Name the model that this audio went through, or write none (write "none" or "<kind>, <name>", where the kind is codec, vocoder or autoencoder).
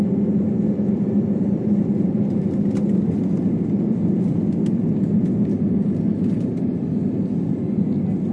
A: none